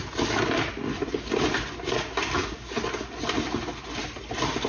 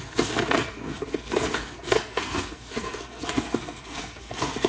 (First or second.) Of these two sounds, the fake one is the second